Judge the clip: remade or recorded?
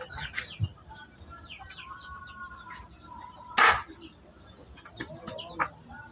recorded